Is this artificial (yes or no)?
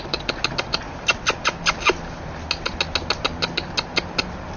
no